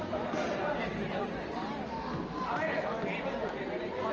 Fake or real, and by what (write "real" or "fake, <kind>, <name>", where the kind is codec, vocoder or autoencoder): real